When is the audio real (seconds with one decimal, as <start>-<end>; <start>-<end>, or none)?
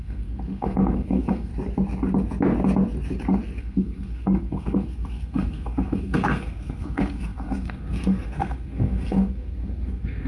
1.5-3.6